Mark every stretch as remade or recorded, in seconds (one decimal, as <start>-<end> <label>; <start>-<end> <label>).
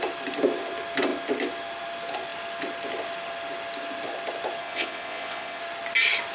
0.0-4.6 recorded; 4.6-5.6 remade; 5.6-6.3 recorded